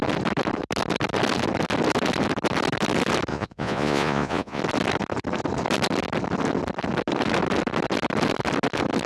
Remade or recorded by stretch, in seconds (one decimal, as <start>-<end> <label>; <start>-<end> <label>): 0.0-3.3 recorded; 3.3-4.6 remade; 4.6-9.1 recorded